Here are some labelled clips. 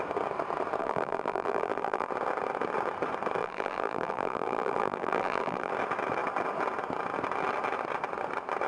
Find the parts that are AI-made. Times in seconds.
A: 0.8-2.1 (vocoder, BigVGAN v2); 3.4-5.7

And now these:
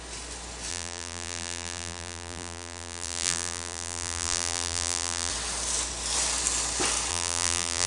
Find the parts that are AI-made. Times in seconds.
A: 0.7-5.3 (vocoder, BigVGAN v2); 7.1-7.9

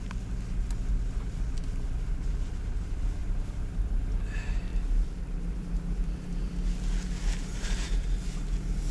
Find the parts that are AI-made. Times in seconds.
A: 3.2-4.0 (vocoder, BigVGAN v2); 4.7-6.5; 7.5-8.2